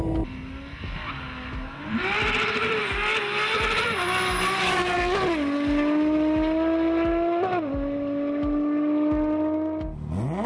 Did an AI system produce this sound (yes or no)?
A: no